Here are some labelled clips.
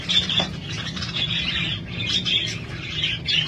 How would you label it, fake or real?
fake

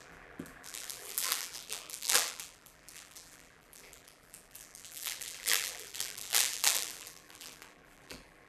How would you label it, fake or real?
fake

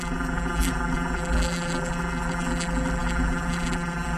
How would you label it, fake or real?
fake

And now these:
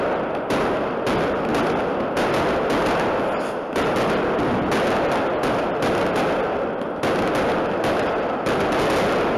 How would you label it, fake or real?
real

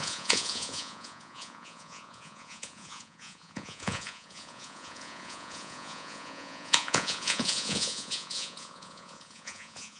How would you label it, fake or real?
fake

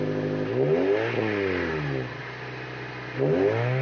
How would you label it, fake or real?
real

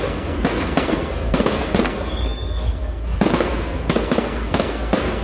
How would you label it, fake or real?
fake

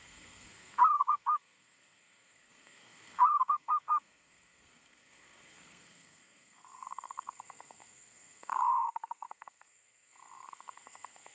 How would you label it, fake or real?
fake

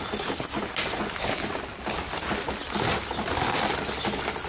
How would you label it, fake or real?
real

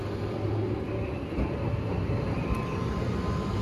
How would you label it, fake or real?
real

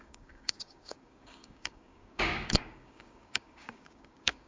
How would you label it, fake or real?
fake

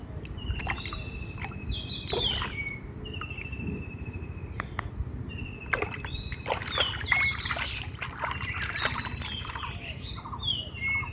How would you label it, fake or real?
real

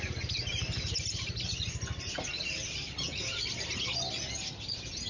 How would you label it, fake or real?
real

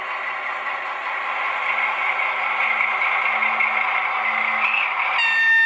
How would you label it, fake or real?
real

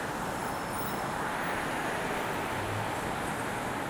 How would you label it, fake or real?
real